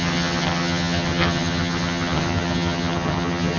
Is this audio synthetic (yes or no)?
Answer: yes